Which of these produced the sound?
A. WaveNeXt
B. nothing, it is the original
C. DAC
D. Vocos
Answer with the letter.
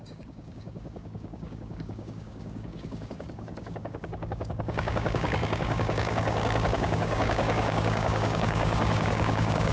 C